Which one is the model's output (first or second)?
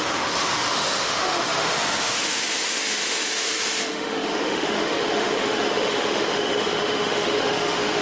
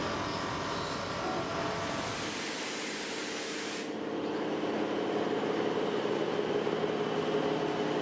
first